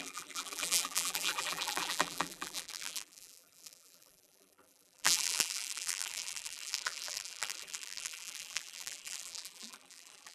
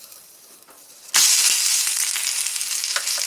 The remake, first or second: first